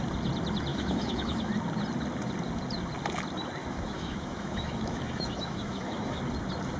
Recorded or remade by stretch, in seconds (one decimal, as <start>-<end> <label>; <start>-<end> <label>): 0.0-0.7 recorded; 0.7-1.5 remade; 1.5-3.6 recorded; 3.6-6.2 remade; 6.2-6.8 recorded